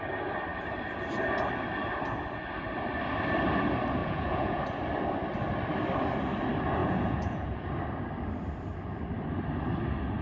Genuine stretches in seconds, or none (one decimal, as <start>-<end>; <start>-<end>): 0.0-4.0; 4.6-6.8; 7.7-10.2